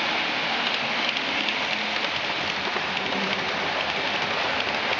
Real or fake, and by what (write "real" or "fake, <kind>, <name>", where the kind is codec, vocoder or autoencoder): real